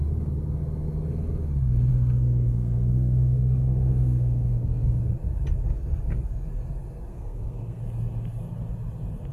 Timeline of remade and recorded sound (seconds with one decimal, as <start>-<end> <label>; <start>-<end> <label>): 0.0-1.9 recorded; 1.9-5.0 remade; 5.0-7.1 recorded; 7.1-7.8 remade; 7.8-9.3 recorded